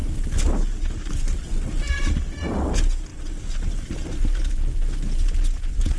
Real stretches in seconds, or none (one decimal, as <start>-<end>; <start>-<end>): 0.0-6.0